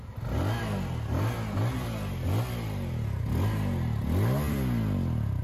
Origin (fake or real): real